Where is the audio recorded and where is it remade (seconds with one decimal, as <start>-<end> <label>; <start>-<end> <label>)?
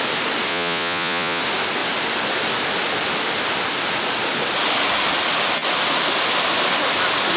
0.0-0.5 recorded; 0.5-1.4 remade; 1.4-7.4 recorded